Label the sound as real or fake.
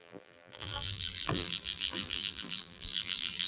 fake